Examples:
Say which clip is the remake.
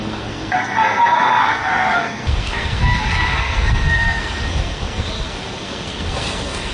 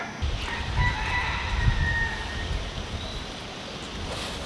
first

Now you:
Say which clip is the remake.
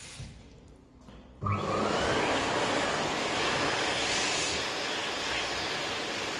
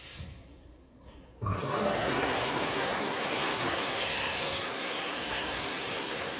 second